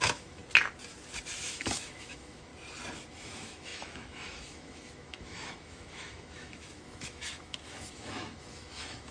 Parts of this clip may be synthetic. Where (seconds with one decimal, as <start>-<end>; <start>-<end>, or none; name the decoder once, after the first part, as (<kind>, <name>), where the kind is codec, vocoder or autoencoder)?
0.0-0.4 (autoencoder, DAC-VAE); 1.5-2.5; 3.1-9.1